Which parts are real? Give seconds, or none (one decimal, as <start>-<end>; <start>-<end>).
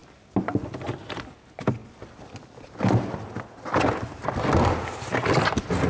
0.0-5.9